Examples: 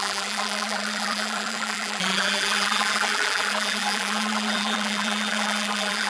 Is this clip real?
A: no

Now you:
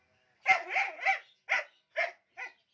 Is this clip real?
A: yes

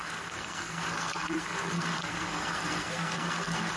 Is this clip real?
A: no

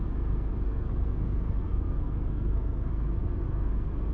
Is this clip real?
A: no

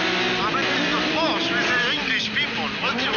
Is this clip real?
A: yes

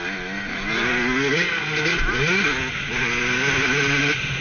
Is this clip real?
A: yes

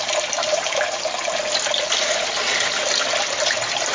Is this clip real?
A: yes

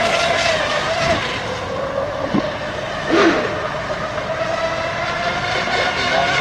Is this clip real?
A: yes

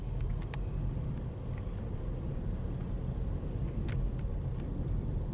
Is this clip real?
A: yes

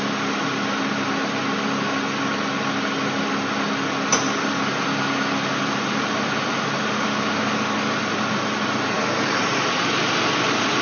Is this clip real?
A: yes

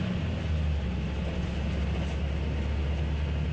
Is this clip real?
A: yes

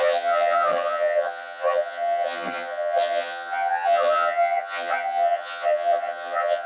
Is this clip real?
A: no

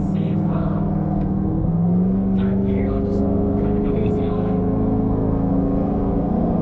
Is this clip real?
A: no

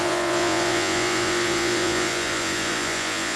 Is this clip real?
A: no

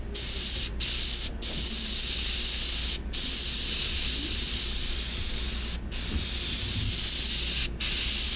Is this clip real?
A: yes